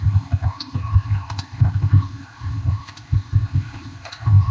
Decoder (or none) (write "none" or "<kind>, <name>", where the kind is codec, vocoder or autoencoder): codec, ZipCodec